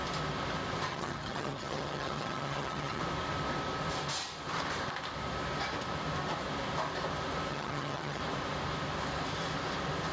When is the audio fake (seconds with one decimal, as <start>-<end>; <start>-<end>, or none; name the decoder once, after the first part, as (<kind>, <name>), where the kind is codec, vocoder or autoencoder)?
0.9-3.0 (vocoder, HiFi-GAN); 7.5-8.2